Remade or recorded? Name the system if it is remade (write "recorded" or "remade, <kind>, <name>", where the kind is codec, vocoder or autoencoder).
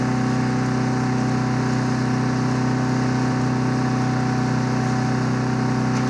recorded